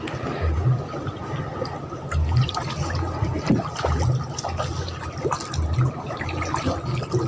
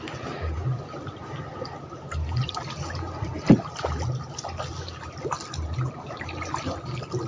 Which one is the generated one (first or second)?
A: second